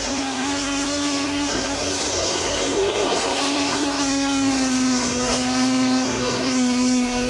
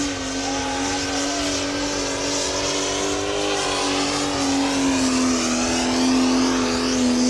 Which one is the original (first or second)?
second